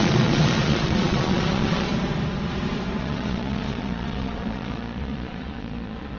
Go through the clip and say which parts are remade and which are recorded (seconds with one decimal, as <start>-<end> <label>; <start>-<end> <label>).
0.0-1.9 remade; 1.9-3.0 recorded; 3.0-6.2 remade